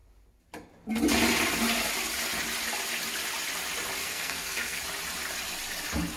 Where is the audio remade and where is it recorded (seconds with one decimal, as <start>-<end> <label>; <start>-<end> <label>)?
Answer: 0.0-4.0 recorded; 4.0-4.8 remade; 4.8-6.2 recorded